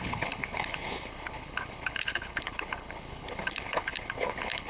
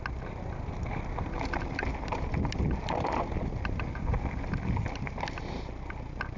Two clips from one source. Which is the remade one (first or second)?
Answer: first